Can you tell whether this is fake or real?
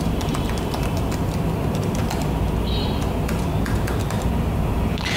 fake